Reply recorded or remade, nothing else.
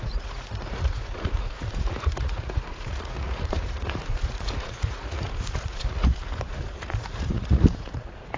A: remade